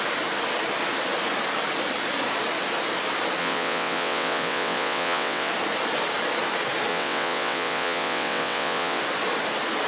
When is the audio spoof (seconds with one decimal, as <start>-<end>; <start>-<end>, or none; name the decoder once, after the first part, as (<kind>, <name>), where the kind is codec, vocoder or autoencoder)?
3.4-5.5 (vocoder, WaveNeXt); 6.9-9.0